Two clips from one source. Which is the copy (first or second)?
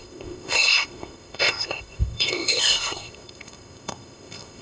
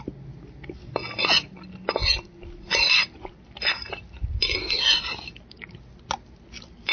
first